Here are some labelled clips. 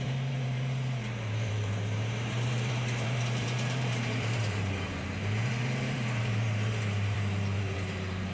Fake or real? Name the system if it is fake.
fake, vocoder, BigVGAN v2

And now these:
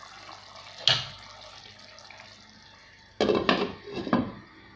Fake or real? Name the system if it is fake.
real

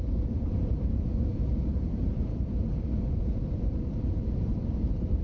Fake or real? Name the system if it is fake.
fake, vocoder, BigVGAN v2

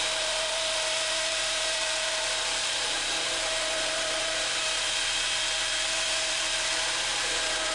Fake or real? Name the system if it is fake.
fake, vocoder, BigVGAN v2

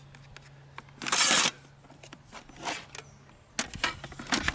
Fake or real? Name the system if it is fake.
real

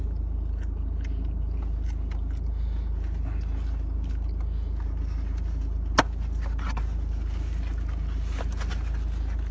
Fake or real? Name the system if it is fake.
real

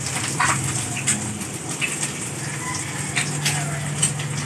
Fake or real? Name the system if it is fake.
real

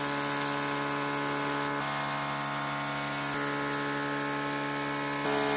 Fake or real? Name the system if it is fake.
real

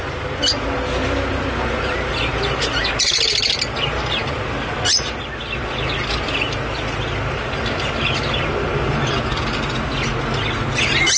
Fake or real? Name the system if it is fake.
real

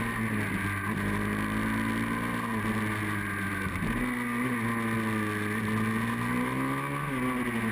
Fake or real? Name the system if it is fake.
real